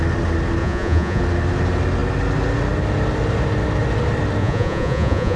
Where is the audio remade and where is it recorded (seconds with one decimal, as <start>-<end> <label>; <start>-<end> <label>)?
0.0-0.6 recorded; 0.6-1.2 remade; 1.2-4.4 recorded; 4.4-5.4 remade